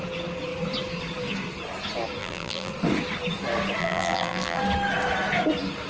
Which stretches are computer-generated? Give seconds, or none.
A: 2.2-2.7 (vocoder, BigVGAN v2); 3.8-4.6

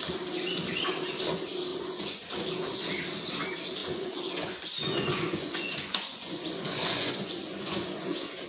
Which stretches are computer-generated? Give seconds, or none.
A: 1.7-2.3 (vocoder, Vocos); 3.8-8.5

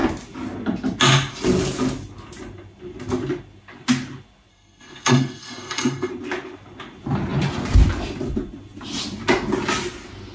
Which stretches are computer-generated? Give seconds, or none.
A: 4.5-6.1 (codec, SNAC)

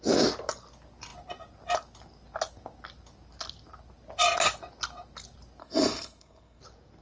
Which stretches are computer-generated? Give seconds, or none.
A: 5.6-6.6 (codec, SNAC)

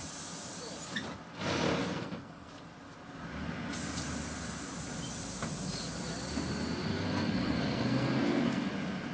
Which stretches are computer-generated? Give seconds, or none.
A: 1.8-2.5 (codec, SNAC); 6.9-8.7

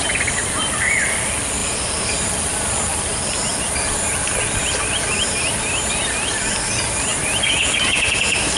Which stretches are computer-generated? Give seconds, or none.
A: none